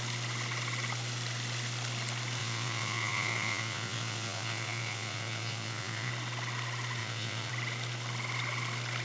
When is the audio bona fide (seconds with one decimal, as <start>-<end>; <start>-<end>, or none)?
0.0-2.4; 6.1-7.0; 7.5-9.0